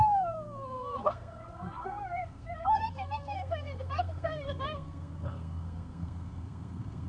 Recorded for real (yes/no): no